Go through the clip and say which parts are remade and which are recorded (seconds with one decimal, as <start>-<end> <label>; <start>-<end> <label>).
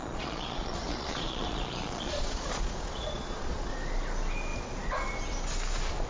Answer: 0.0-3.7 remade; 3.7-6.1 recorded